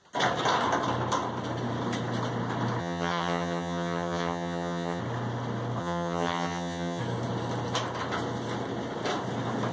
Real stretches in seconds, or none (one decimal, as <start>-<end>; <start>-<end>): 0.0-2.8; 5.0-5.8; 7.0-9.7